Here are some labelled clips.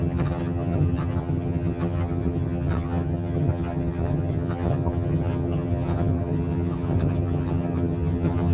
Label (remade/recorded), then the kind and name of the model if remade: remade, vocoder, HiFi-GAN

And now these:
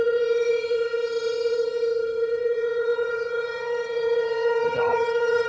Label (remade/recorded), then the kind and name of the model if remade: remade, vocoder, HiFi-GAN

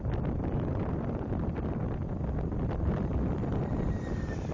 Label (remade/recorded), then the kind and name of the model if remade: remade, vocoder, BigVGAN v2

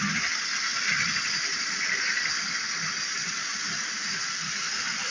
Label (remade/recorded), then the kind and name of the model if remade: recorded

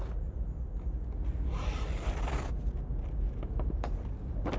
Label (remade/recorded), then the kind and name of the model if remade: recorded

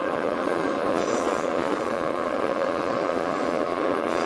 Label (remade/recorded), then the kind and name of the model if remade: remade, vocoder, Vocos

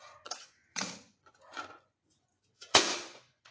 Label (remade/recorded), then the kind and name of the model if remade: remade, vocoder, Vocos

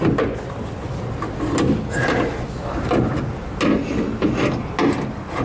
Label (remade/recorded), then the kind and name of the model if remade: recorded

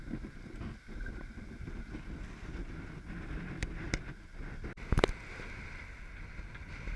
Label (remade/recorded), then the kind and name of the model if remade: recorded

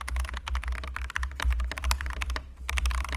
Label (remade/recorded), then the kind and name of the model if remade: recorded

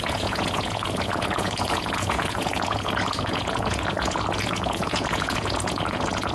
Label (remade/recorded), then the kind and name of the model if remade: remade, vocoder, Vocos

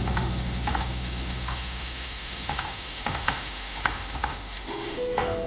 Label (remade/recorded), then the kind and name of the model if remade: remade, autoencoder, DAC-VAE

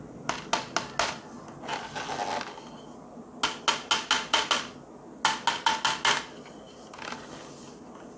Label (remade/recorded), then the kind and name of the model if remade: recorded